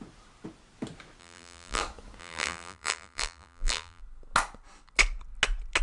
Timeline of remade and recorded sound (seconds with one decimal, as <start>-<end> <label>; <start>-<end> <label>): 0.0-1.2 recorded; 1.2-1.8 remade; 1.8-2.2 recorded; 2.2-4.0 remade; 4.0-5.8 recorded